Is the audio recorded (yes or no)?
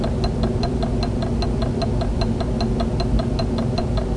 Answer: yes